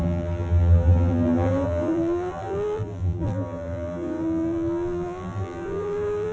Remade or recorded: remade